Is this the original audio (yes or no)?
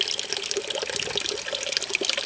yes